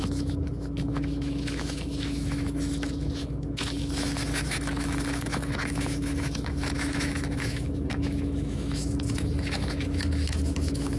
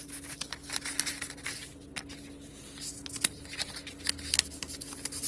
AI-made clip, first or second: first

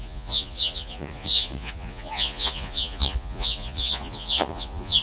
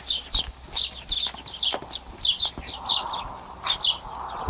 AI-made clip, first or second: first